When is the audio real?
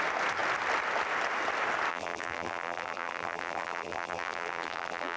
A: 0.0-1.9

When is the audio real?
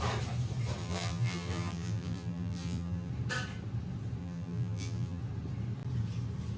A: 0.0-0.8; 3.1-4.2; 5.2-6.6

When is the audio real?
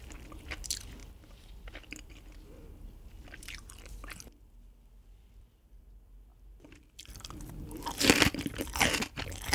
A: 0.0-1.0; 5.8-9.5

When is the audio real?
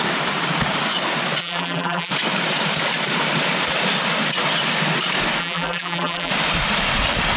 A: 0.0-1.4; 2.1-5.4; 6.3-7.4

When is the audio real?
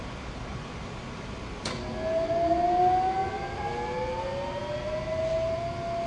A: 0.0-6.1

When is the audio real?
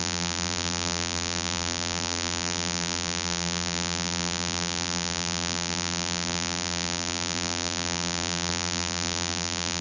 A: none